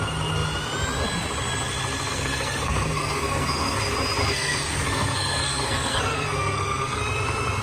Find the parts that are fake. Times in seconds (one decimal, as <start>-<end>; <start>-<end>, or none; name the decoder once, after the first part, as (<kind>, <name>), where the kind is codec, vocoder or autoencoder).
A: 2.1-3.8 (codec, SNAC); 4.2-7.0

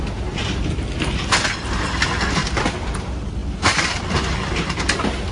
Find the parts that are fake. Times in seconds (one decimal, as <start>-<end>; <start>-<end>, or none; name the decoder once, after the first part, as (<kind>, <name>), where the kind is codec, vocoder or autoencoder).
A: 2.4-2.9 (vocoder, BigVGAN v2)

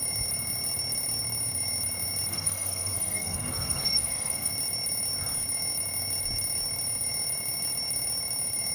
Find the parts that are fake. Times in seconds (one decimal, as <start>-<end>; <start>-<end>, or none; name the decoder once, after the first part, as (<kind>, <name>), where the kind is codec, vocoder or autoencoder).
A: 2.3-4.5 (codec, SNAC)

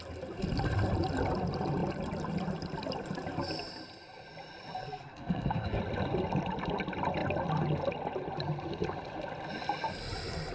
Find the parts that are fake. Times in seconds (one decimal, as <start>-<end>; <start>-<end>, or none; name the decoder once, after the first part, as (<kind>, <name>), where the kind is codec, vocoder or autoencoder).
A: 4.8-5.8 (codec, SNAC)